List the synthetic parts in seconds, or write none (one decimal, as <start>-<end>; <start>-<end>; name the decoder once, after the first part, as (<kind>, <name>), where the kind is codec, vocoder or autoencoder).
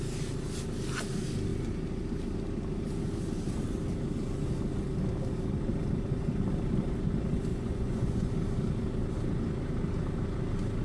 7.5-8.3 (vocoder, Vocos)